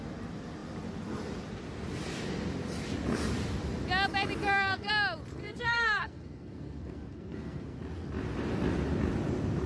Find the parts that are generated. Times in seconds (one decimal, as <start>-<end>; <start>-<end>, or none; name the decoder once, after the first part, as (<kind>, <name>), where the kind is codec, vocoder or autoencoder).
4.4-4.9 (codec, SNAC); 5.4-7.8